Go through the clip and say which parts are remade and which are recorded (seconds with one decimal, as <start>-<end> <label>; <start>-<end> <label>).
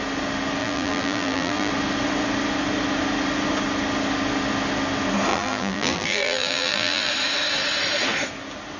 0.0-0.6 recorded; 0.6-1.7 remade; 1.7-5.3 recorded; 5.3-7.1 remade; 7.1-8.8 recorded